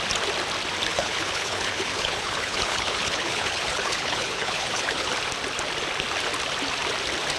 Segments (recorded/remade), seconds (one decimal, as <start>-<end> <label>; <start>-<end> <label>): 0.0-0.9 recorded; 0.9-5.1 remade; 5.1-7.4 recorded